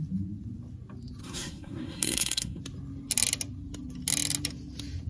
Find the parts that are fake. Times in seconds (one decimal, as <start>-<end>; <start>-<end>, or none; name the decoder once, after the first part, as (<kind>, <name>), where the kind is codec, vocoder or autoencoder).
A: 1.2-2.6 (codec, SNAC)